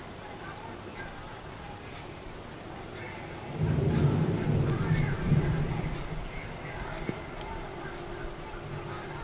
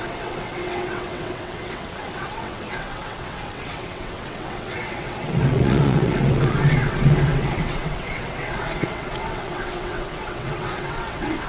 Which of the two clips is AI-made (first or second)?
second